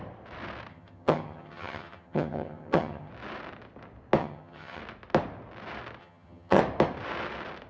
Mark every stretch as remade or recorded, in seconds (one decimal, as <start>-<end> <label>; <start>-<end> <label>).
0.0-0.7 recorded; 0.7-3.1 remade; 3.1-4.2 recorded; 4.2-4.8 remade; 4.8-6.0 recorded; 6.0-6.6 remade; 6.6-7.7 recorded